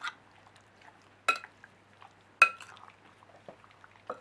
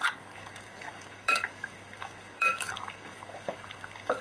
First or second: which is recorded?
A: first